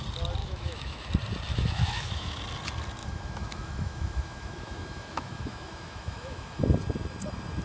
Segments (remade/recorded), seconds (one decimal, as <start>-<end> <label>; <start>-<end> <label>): 0.0-0.4 recorded; 0.4-1.1 remade; 1.1-1.5 recorded; 1.5-2.4 remade; 2.4-3.0 recorded; 3.0-6.6 remade; 6.6-7.6 recorded